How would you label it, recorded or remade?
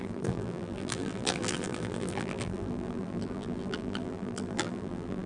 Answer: remade